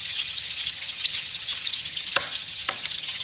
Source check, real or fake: fake